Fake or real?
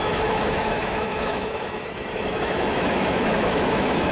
fake